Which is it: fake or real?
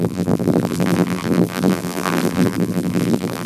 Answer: fake